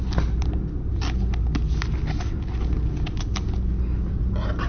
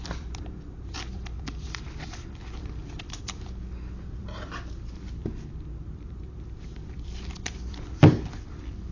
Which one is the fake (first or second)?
second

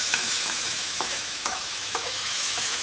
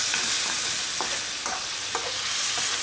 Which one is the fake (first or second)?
first